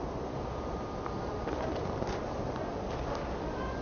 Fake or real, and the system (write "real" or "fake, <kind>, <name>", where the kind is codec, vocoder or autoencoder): real